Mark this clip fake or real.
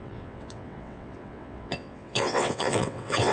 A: fake